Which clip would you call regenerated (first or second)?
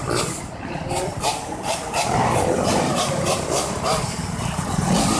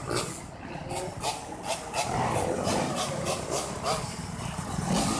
first